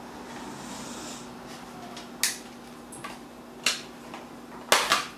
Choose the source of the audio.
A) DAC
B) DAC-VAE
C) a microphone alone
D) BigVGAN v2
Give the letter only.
C